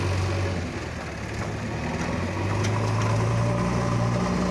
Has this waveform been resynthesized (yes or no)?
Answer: no